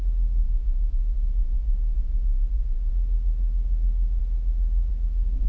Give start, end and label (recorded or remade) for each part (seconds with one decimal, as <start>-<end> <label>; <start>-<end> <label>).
0.0-0.4 recorded; 0.4-2.9 remade; 2.9-5.5 recorded